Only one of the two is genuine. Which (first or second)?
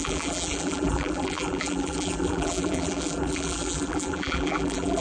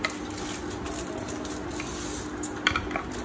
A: second